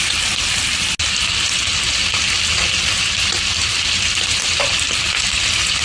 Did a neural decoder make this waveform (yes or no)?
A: no